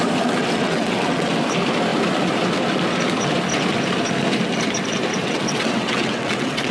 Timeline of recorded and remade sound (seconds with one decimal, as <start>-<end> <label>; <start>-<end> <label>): 0.0-0.4 recorded; 0.4-1.3 remade; 1.3-5.1 recorded; 5.1-6.7 remade